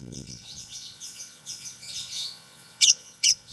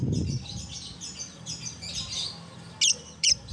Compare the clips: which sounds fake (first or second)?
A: first